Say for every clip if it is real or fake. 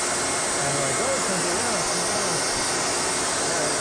real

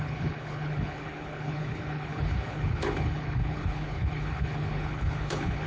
fake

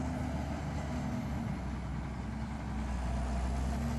real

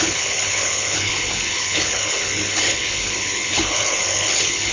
fake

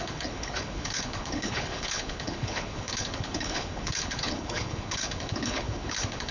fake